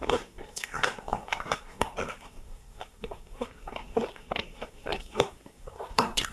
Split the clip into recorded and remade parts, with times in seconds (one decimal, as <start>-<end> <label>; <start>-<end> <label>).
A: 0.0-6.3 remade